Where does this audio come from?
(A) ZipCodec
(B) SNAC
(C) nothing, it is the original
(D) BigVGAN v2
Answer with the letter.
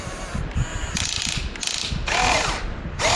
C